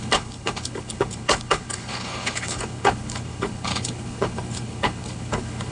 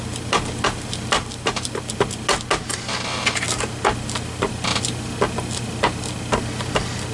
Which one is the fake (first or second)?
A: first